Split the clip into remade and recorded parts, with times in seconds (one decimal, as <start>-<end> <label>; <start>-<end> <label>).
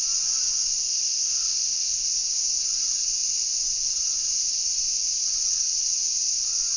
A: 0.0-0.9 recorded; 0.9-2.2 remade; 2.2-6.8 recorded